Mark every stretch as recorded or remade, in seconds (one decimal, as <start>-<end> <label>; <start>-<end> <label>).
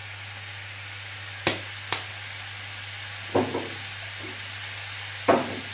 0.0-5.7 recorded